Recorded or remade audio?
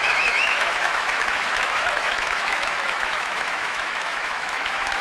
remade